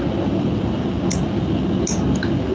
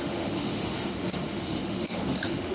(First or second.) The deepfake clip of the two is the second